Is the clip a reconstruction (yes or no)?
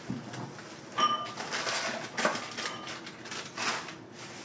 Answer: no